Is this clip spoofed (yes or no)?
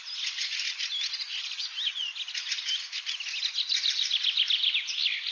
no